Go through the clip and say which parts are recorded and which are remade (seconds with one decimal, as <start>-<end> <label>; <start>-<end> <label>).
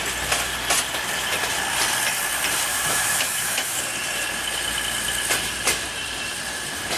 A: 0.0-2.7 recorded; 2.7-3.8 remade; 3.8-7.0 recorded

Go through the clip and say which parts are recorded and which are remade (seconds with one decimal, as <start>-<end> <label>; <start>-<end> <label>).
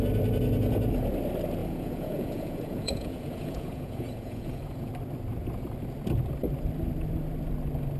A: 0.0-1.6 recorded; 1.6-4.9 remade; 4.9-8.0 recorded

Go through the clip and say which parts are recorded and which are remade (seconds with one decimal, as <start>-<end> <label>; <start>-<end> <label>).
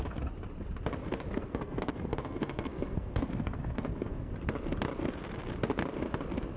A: 0.0-1.0 recorded; 1.0-4.3 remade; 4.3-6.6 recorded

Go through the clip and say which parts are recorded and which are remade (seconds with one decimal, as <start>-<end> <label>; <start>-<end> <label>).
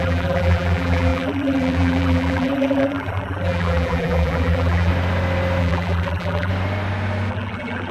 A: 0.0-4.9 remade; 4.9-5.6 recorded; 5.6-6.5 remade; 6.5-7.3 recorded; 7.3-7.9 remade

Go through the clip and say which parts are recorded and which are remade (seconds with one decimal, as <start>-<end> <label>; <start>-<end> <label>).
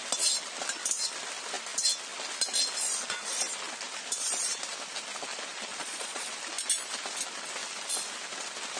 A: 0.0-5.8 recorded; 5.8-6.3 remade; 6.3-8.8 recorded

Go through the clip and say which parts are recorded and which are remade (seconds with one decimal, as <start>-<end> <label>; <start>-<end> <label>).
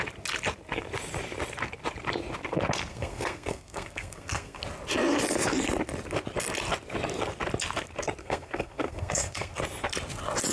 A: 0.0-2.9 recorded; 2.9-4.6 remade; 4.6-8.2 recorded; 8.2-9.5 remade; 9.5-10.5 recorded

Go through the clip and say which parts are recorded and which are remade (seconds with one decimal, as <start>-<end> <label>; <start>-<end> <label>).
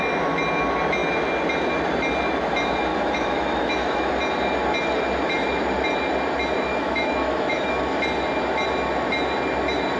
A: 0.0-2.9 recorded; 2.9-4.1 remade; 4.1-6.7 recorded; 6.7-7.8 remade; 7.8-10.0 recorded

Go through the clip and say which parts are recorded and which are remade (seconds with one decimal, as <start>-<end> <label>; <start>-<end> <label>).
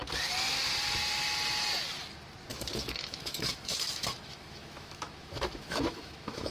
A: 0.0-2.5 recorded; 2.5-6.5 remade